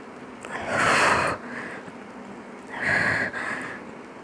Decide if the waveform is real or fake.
real